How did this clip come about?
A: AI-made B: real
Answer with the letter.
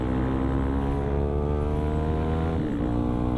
B